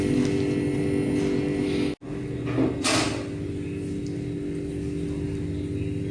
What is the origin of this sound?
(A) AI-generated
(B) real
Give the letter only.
B